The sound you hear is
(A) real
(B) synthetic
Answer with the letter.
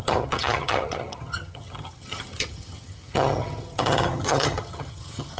B